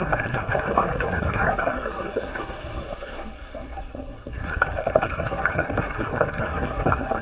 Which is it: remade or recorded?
remade